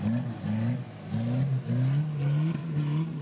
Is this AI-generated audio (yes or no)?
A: no